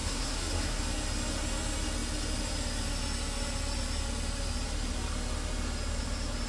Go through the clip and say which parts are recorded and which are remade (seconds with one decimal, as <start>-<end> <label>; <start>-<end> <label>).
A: 0.0-0.8 remade; 0.8-6.5 recorded